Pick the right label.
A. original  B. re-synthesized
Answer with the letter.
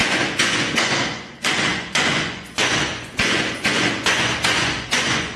B